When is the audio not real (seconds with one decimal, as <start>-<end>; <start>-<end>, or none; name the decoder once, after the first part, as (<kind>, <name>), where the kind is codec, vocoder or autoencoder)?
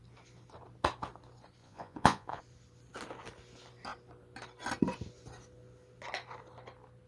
1.6-2.4 (vocoder, Vocos)